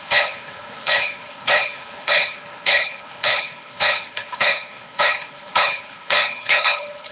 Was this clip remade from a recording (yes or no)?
yes